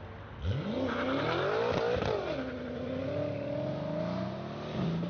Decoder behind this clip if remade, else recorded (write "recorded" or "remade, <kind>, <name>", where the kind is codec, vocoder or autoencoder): recorded